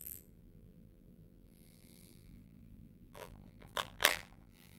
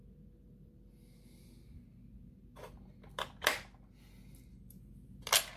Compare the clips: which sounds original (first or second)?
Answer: second